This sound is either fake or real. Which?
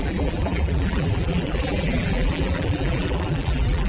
fake